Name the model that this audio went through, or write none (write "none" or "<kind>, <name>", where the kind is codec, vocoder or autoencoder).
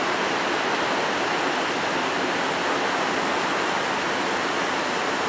none